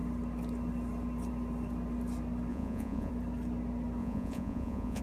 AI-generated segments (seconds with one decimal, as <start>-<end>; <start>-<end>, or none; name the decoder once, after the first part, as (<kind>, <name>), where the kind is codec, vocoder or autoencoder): 2.5-3.1 (vocoder, Vocos); 4.0-5.0